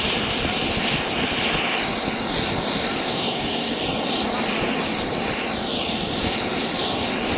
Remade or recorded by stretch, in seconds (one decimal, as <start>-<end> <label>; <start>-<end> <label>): 0.0-3.1 recorded; 3.1-3.7 remade; 3.7-7.4 recorded

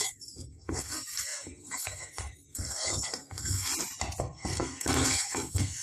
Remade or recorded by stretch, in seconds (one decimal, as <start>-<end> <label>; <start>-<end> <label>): 0.0-3.7 remade; 3.7-4.2 recorded; 4.2-5.8 remade

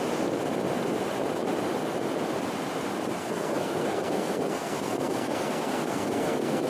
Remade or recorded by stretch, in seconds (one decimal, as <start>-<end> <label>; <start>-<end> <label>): 0.0-3.2 recorded; 3.2-6.7 remade

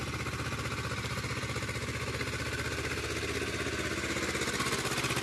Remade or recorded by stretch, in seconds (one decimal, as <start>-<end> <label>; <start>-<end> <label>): 0.0-5.2 recorded

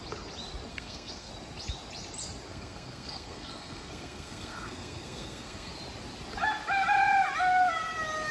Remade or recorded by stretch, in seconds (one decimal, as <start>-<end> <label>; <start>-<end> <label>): 0.0-0.7 recorded; 0.7-1.3 remade; 1.3-2.5 recorded; 2.5-5.7 remade; 5.7-8.3 recorded

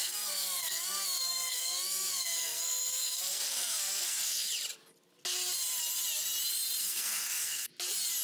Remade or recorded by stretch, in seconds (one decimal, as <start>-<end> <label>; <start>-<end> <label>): 0.0-4.5 remade; 4.5-6.8 recorded; 6.8-7.7 remade; 7.7-8.2 recorded

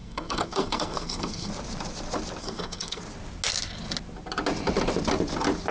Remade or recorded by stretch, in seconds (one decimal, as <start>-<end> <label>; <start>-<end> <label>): 0.0-1.5 remade; 1.5-2.4 recorded; 2.4-3.0 remade; 3.0-5.7 recorded